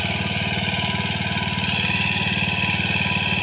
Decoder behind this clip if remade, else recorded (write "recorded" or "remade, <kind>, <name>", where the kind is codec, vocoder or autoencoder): recorded